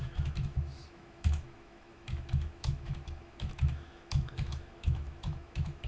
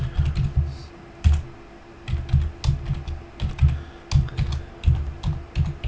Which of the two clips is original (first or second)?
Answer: second